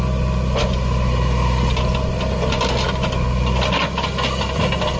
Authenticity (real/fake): real